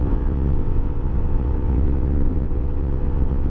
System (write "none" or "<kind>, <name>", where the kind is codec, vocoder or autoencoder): vocoder, WaveNeXt